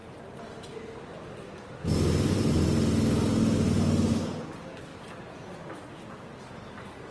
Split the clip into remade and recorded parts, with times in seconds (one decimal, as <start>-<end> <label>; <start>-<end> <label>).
0.0-4.1 recorded; 4.1-4.9 remade; 4.9-6.1 recorded; 6.1-7.1 remade